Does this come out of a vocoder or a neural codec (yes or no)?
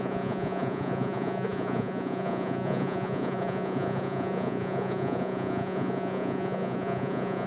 yes